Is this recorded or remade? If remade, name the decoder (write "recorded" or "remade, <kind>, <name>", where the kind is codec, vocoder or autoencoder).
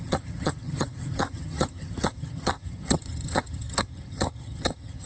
remade, vocoder, HiFi-GAN